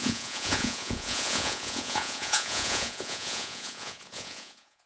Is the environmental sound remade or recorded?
remade